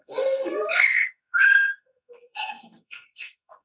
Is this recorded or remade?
remade